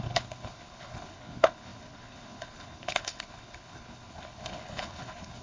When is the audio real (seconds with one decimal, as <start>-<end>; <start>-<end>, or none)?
none